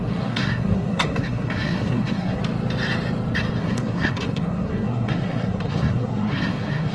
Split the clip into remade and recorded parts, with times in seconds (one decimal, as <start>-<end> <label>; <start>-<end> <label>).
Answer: 0.0-2.4 remade; 2.4-3.6 recorded; 3.6-6.9 remade